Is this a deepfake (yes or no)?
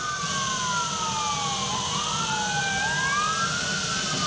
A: no